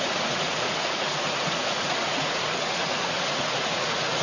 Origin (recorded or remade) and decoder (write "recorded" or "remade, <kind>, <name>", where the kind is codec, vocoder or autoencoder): remade, vocoder, Vocos